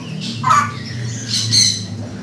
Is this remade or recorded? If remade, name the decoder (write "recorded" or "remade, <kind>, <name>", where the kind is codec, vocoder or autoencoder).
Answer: recorded